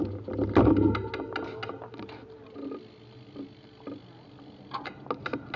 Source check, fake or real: real